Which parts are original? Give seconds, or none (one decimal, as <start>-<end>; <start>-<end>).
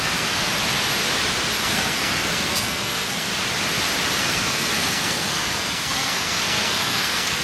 0.5-1.6; 3.3-4.2